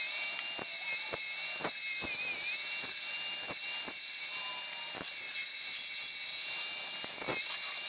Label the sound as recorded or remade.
recorded